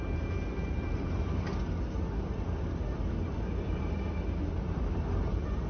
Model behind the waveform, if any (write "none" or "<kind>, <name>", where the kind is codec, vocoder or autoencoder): none